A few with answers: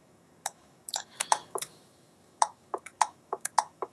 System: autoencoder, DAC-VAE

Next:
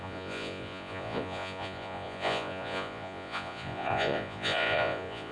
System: vocoder, Vocos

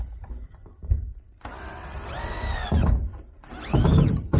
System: vocoder, BigVGAN v2